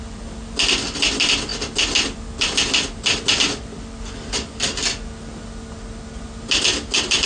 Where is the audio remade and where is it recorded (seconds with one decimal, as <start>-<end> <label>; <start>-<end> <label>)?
0.0-7.3 recorded